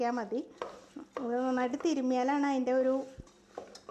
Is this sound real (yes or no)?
yes